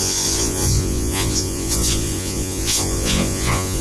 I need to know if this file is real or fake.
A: fake